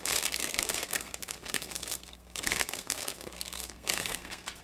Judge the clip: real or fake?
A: fake